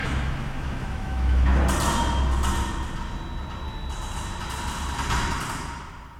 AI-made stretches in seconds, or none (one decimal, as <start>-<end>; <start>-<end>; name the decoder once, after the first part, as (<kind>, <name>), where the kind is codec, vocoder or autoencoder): 0.0-1.6 (autoencoder, DAC-VAE)